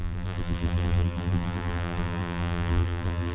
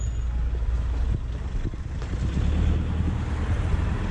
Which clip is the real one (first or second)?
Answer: second